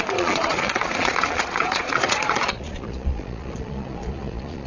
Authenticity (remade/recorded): remade